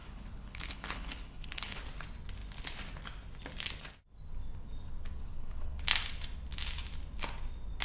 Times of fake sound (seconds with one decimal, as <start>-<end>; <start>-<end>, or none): 0.0-1.8; 5.2-5.8